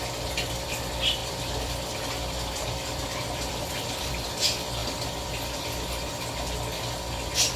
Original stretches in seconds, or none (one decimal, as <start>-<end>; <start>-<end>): 0.0-1.2; 4.3-4.8; 5.3-7.6